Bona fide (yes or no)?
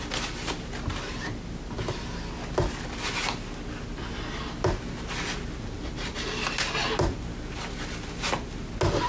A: yes